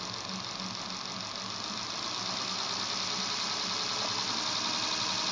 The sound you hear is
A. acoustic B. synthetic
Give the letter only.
A